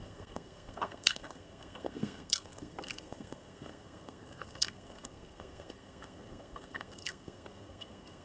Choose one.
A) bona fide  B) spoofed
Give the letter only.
B